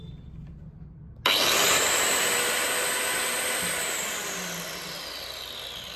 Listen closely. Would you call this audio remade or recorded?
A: recorded